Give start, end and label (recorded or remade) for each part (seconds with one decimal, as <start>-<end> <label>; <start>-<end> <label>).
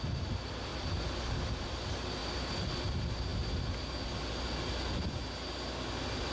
0.0-6.3 recorded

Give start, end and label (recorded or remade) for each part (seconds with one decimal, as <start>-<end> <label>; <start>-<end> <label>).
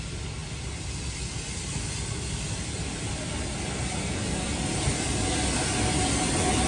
0.0-6.7 recorded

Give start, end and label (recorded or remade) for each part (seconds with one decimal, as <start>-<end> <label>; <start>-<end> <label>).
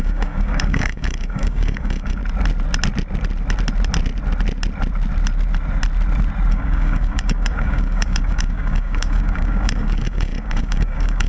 0.0-2.2 remade; 2.2-6.5 recorded; 6.5-11.3 remade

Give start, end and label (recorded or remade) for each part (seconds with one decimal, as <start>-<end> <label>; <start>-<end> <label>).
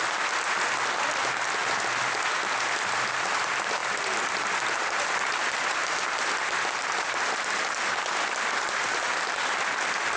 0.0-5.8 remade; 5.8-8.3 recorded; 8.3-10.2 remade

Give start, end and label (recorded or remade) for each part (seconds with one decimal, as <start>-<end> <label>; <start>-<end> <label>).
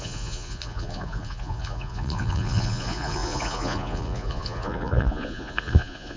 0.0-6.2 remade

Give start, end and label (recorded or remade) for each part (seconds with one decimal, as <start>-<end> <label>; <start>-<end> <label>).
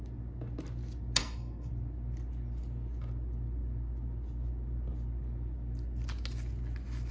0.0-1.2 recorded; 1.2-1.7 remade; 1.7-7.1 recorded